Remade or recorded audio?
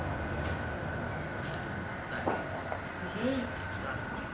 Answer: recorded